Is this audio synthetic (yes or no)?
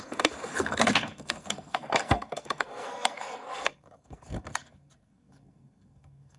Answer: yes